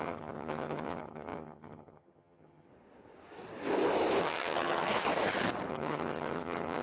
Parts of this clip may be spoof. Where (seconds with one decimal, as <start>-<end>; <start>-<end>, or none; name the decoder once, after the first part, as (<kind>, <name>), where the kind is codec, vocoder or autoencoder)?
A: 0.0-2.7 (vocoder, HiFi-GAN); 4.2-4.9; 5.7-6.8